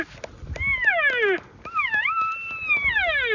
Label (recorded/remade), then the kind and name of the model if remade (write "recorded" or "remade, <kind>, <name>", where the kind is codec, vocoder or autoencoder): recorded